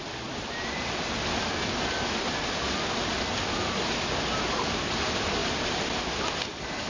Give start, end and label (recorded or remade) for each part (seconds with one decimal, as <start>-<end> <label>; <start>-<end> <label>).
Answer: 0.0-6.9 recorded